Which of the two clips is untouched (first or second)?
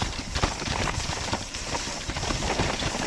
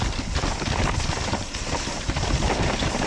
second